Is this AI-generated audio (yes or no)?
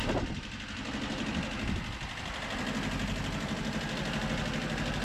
no